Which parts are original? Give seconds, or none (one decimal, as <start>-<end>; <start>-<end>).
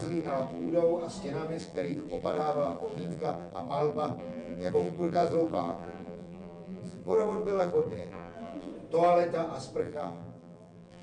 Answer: 0.7-1.6; 8.7-9.8